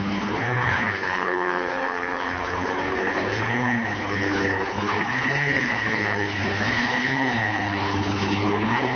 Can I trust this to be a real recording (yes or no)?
no